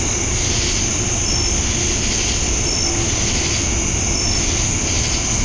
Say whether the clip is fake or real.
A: real